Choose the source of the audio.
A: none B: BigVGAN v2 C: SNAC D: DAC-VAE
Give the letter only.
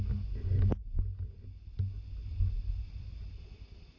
A